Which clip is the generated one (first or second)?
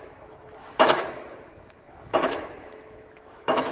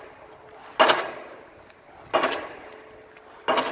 first